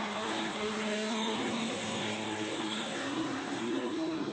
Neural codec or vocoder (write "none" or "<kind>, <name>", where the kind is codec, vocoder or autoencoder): codec, SNAC